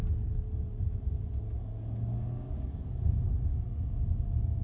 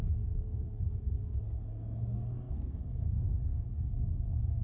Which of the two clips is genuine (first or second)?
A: first